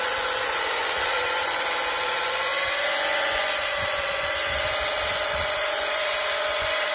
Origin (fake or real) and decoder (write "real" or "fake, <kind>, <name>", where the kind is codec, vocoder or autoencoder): fake, vocoder, Vocos